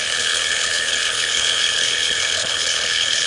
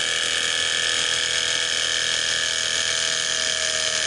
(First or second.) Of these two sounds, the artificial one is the first